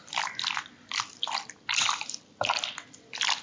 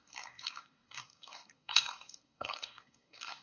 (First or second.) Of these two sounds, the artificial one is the second